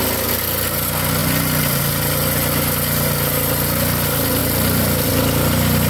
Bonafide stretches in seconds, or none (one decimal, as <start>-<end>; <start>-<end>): 0.0-1.2; 1.8-4.4; 5.1-5.9